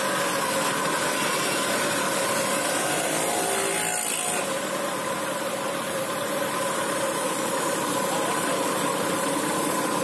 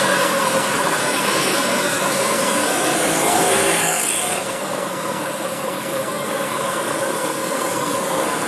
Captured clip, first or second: first